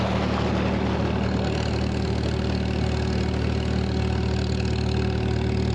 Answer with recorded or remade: recorded